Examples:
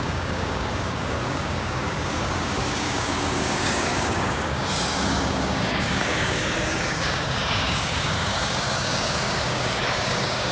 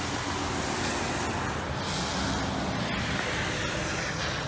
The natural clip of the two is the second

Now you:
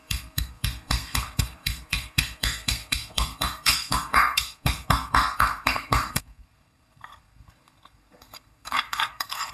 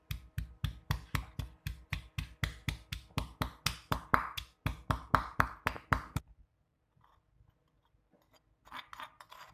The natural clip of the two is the second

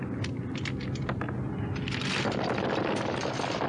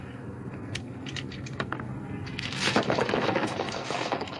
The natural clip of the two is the first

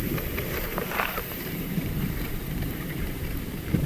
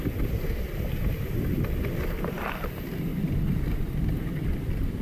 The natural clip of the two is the second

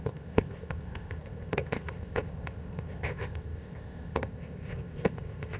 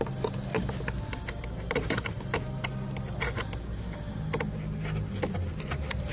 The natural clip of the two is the second